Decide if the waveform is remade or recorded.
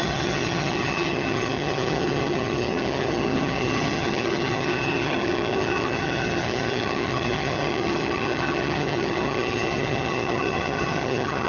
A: remade